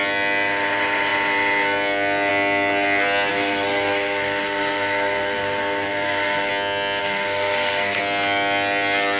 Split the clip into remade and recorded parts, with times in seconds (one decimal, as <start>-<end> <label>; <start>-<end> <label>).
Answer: 0.0-3.3 recorded; 3.3-6.5 remade; 6.5-7.0 recorded; 7.0-8.0 remade; 8.0-9.2 recorded